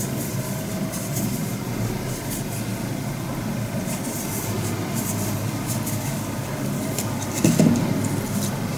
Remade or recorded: recorded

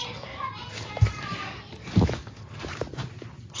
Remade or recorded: recorded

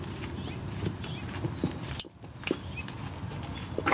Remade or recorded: recorded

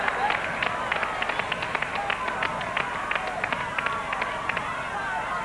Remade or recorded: recorded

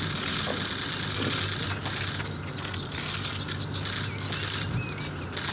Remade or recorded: recorded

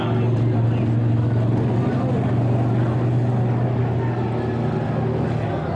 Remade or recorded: recorded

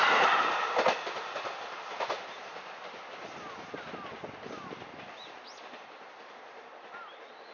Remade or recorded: recorded